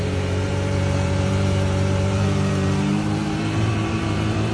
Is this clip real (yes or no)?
no